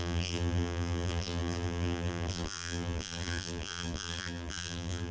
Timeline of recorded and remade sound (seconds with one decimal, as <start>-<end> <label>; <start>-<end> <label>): 0.0-5.1 remade